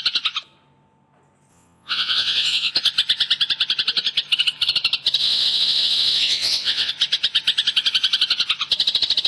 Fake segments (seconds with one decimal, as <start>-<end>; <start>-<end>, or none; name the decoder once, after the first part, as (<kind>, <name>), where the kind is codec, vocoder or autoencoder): 1.5-2.7 (vocoder, WaveNeXt); 5.2-6.9